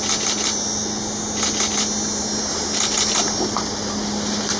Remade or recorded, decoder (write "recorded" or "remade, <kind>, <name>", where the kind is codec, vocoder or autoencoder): recorded